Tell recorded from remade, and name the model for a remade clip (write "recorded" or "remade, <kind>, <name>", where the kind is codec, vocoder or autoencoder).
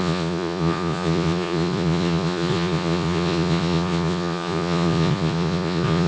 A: remade, vocoder, Vocos